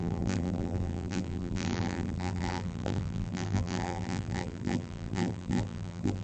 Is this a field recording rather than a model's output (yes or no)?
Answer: no